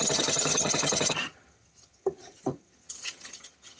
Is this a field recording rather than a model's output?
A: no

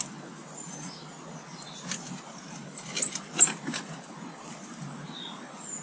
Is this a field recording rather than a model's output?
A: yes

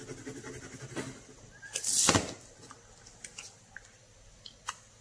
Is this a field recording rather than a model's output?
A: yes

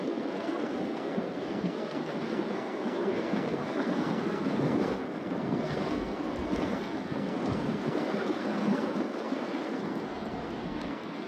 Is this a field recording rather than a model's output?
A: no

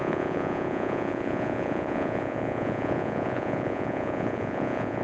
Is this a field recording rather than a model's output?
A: no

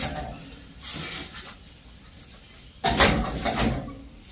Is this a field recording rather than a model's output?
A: no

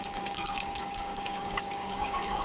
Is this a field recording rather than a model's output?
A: no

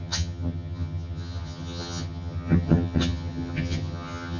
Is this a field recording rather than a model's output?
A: no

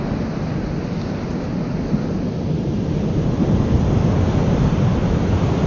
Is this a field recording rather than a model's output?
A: yes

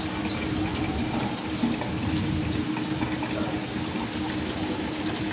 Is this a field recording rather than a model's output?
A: yes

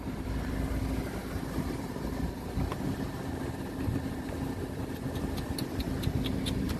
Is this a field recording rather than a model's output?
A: no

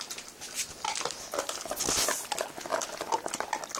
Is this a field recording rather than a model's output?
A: yes